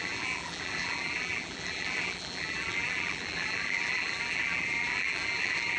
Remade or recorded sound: remade